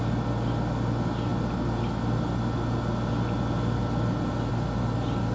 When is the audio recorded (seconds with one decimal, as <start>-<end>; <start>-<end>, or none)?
0.0-5.3